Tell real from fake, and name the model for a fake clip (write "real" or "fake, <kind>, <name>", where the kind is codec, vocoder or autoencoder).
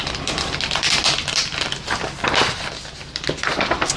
real